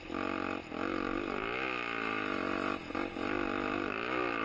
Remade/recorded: recorded